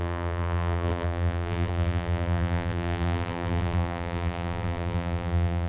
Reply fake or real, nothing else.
fake